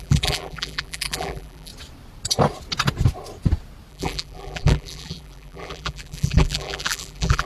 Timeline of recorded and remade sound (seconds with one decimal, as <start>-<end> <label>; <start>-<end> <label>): 0.0-1.7 remade; 1.7-3.9 recorded; 3.9-7.5 remade